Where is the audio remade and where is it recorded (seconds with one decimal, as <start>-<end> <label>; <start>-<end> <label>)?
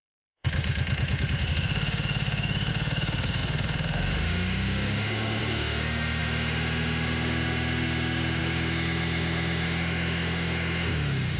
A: 0.0-11.4 remade